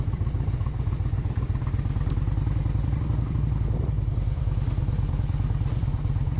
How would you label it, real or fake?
fake